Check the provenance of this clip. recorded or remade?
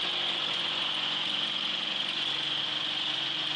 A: remade